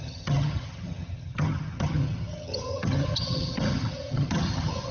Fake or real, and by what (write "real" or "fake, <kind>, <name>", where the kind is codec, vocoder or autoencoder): fake, vocoder, HiFi-GAN